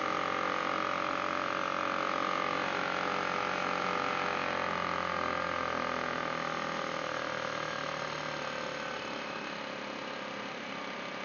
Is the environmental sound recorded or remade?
recorded